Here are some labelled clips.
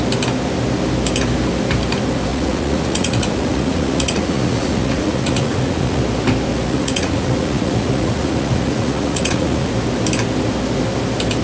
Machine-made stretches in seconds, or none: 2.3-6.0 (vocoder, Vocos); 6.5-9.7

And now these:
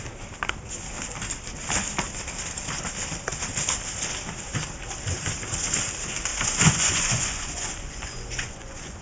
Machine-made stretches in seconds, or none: 6.3-9.0 (vocoder, Vocos)

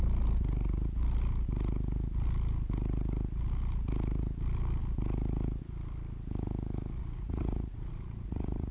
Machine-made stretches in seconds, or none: 7.0-8.7 (vocoder, Vocos)

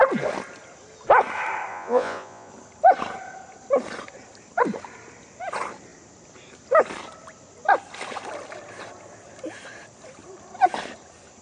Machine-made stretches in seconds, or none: 1.7-2.5 (vocoder, Vocos)

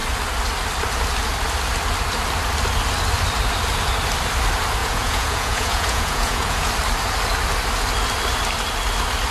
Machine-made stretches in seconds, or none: 4.8-6.7 (vocoder, Vocos)